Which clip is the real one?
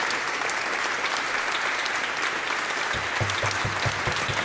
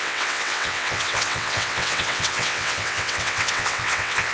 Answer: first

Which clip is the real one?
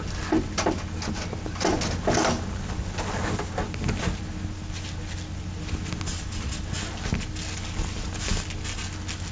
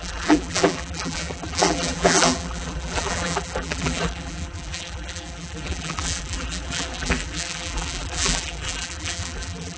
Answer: first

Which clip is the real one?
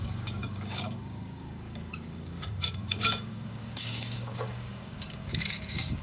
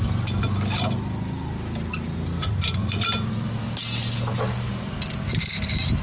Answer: second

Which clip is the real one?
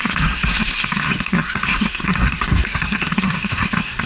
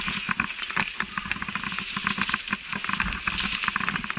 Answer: second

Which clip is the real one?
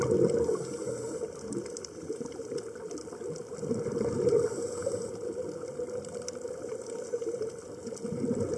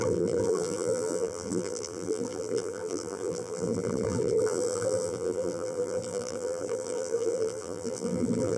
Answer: first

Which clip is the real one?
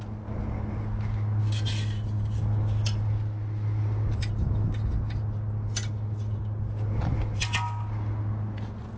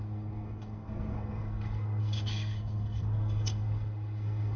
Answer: first